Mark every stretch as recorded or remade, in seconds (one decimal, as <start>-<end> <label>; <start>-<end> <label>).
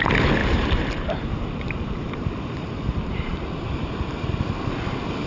0.0-0.4 recorded; 0.4-3.6 remade; 3.6-5.3 recorded